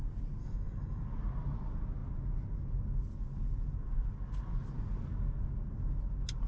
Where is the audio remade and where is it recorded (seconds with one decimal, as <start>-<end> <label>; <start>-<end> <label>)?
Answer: 0.0-0.4 recorded; 0.4-1.0 remade; 1.0-6.5 recorded